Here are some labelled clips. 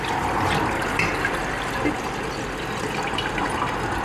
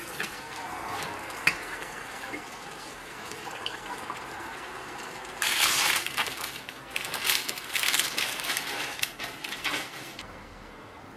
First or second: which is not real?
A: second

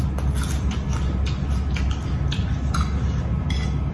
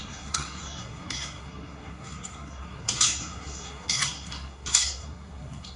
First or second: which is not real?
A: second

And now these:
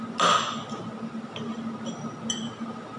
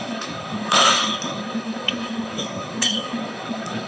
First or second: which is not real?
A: second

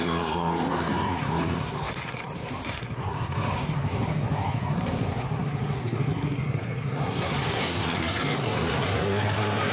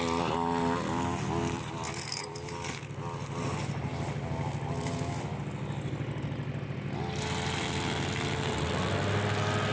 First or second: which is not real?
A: first